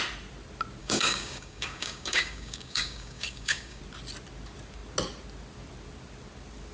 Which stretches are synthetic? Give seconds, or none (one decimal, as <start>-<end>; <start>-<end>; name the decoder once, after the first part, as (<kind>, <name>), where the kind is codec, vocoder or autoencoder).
0.8-3.8 (codec, DAC)